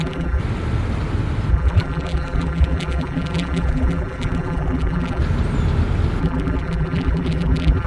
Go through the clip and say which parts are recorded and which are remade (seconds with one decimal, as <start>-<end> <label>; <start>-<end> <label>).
0.0-0.4 remade; 0.4-1.5 recorded; 1.5-5.2 remade; 5.2-6.2 recorded; 6.2-7.9 remade